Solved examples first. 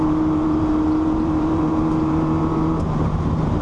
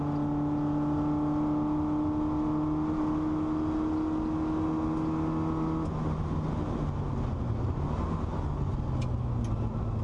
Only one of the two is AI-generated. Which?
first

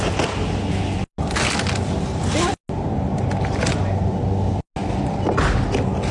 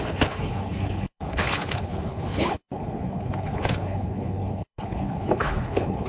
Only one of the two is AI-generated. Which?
second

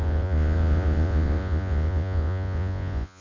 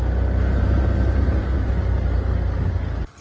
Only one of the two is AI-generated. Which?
first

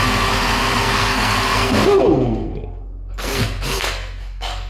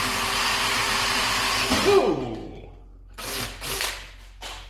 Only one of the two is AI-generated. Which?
first